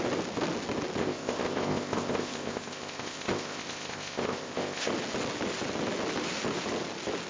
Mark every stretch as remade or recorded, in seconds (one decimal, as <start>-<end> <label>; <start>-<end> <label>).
0.0-1.0 recorded; 1.0-4.9 remade; 4.9-7.3 recorded